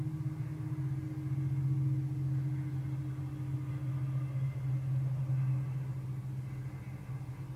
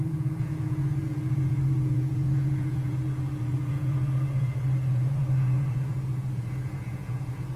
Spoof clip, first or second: second